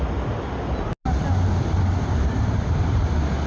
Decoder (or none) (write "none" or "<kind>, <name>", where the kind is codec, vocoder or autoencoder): none